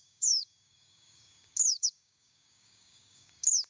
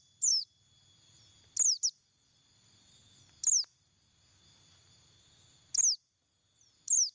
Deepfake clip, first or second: first